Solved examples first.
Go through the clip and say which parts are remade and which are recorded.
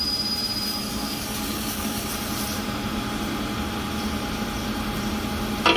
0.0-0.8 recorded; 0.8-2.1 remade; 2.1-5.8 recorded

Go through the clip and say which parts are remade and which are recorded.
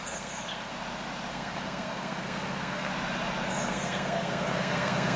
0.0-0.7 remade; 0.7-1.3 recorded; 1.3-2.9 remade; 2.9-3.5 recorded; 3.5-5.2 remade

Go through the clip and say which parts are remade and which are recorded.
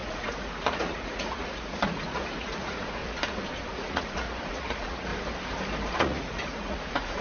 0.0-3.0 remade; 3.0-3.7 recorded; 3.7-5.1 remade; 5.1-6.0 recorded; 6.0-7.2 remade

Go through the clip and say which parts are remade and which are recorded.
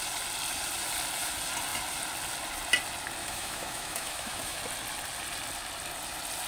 0.0-3.2 recorded; 3.2-4.6 remade; 4.6-6.5 recorded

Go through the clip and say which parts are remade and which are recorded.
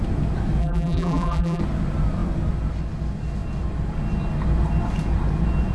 0.0-0.6 recorded; 0.6-1.6 remade; 1.6-5.7 recorded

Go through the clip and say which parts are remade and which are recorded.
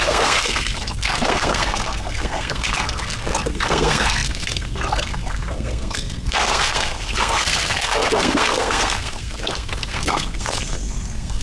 0.0-11.4 remade